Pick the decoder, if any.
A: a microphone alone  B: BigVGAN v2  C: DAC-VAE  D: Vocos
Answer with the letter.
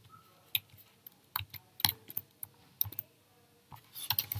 A